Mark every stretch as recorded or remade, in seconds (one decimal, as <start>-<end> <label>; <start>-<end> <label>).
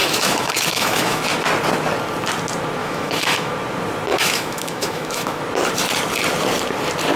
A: 0.0-1.2 remade; 1.2-2.8 recorded; 2.8-3.5 remade; 3.5-4.1 recorded; 4.1-5.4 remade; 5.4-7.2 recorded